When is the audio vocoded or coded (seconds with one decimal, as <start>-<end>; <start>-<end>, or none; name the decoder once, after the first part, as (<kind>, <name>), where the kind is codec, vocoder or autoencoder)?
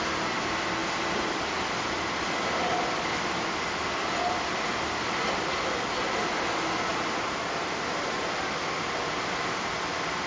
0.8-5.9 (vocoder, BigVGAN v2); 6.9-9.2